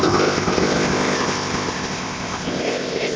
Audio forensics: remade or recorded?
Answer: remade